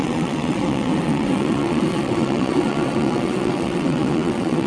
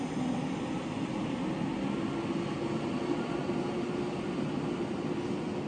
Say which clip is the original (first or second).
second